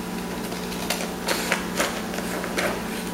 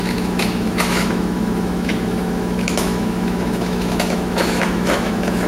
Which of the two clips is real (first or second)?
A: first